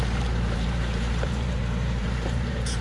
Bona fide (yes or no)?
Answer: no